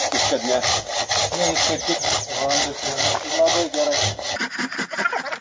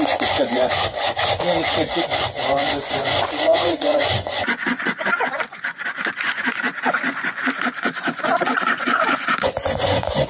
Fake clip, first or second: second